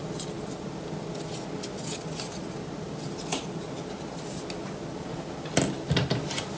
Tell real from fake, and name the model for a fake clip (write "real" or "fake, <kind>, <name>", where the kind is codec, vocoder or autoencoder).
real